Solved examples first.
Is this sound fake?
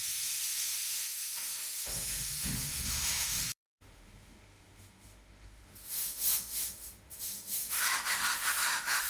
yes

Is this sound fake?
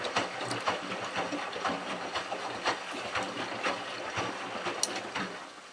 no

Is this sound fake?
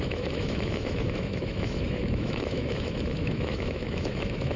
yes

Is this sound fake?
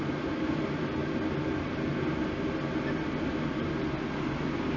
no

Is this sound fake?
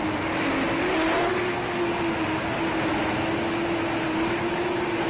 no